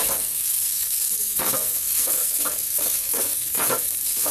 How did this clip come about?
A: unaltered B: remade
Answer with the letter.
B